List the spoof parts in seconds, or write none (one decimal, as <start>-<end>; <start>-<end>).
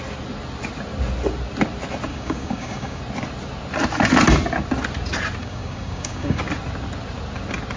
2.1-3.0; 5.4-6.4